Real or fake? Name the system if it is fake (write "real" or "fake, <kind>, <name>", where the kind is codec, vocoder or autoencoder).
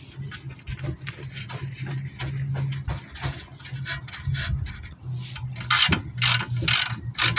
real